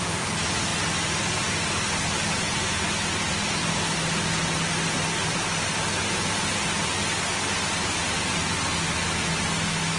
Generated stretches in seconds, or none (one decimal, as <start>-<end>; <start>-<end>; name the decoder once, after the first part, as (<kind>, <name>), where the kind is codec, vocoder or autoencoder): none